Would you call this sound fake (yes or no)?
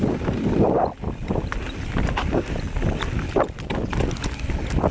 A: no